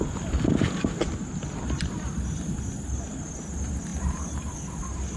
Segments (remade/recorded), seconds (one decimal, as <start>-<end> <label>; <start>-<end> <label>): 0.0-5.2 recorded